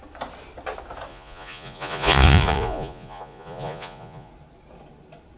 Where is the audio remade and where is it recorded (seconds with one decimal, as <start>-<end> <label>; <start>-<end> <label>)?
0.0-1.1 recorded; 1.1-4.3 remade; 4.3-5.4 recorded